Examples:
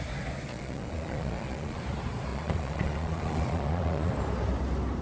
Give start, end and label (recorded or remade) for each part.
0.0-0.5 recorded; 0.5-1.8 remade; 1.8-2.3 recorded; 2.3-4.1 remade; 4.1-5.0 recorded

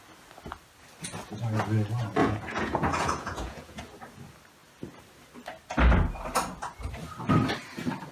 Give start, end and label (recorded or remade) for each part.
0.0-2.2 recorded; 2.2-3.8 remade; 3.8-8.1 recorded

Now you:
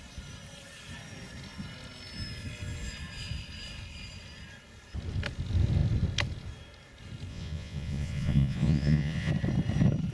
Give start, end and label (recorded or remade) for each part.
0.0-7.3 recorded; 7.3-9.3 remade; 9.3-10.1 recorded

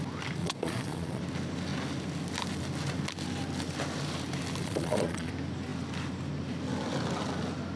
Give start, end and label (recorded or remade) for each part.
0.0-0.4 recorded; 0.4-1.2 remade; 1.2-4.6 recorded; 4.6-5.3 remade; 5.3-7.8 recorded

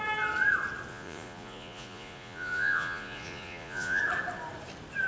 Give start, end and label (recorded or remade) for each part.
0.0-0.9 recorded; 0.9-4.0 remade; 4.0-5.1 recorded

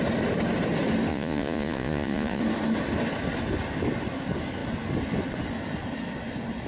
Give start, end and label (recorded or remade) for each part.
0.0-1.1 recorded; 1.1-2.4 remade; 2.4-6.7 recorded

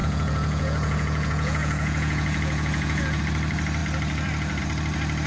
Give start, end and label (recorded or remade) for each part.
0.0-3.2 remade; 3.2-5.3 recorded